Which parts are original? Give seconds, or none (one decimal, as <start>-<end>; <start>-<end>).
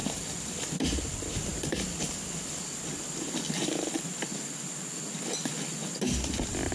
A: 0.0-6.7